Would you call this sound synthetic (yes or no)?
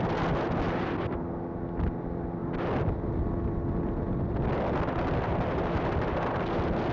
no